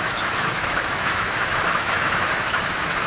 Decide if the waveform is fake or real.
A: fake